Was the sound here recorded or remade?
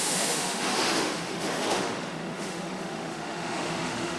remade